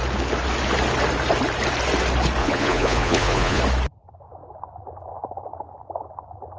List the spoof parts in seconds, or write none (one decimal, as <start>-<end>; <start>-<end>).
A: 2.4-3.6